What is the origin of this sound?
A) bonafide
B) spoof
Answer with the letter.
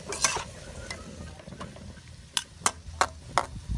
A